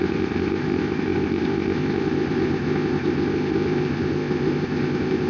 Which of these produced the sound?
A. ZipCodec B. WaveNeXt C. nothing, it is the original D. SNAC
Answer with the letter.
A